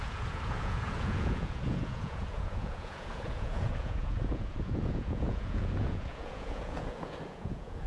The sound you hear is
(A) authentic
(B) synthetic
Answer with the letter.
B